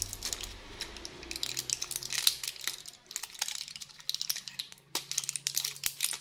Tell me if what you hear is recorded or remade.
recorded